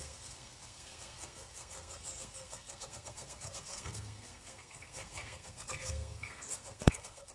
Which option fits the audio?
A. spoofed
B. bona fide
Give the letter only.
A